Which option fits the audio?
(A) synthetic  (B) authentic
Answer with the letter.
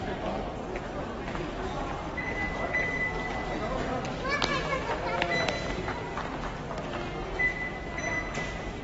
B